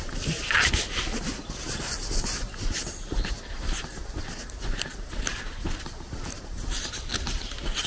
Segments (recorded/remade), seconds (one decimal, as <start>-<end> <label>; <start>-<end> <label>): 0.0-7.9 recorded